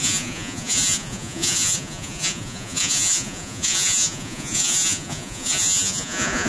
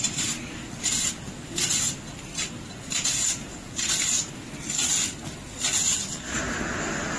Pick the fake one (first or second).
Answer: first